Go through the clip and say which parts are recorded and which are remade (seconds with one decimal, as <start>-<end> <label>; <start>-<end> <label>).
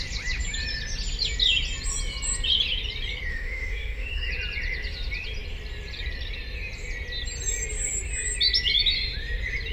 0.0-3.3 recorded; 3.3-4.3 remade; 4.3-9.7 recorded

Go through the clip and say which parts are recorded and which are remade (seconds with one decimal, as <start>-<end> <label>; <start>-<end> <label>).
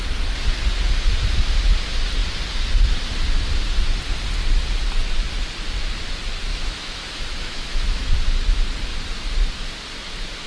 0.0-6.5 recorded; 6.5-8.1 remade; 8.1-10.5 recorded